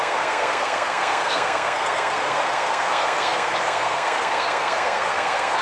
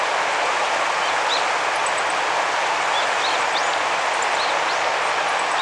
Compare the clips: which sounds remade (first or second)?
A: first